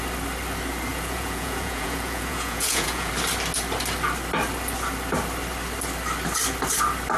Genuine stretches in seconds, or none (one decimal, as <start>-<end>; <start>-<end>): 0.0-0.9; 3.1-7.2